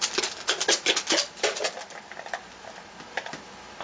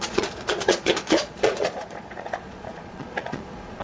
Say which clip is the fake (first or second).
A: second